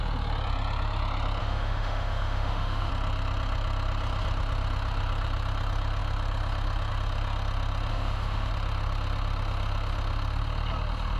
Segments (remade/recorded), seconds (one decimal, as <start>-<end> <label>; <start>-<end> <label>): 0.0-1.4 recorded; 1.4-2.9 remade; 2.9-7.9 recorded; 7.9-8.5 remade; 8.5-11.2 recorded